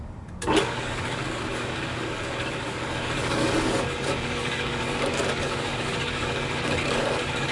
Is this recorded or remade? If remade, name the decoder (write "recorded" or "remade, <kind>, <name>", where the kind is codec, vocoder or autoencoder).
remade, codec, DAC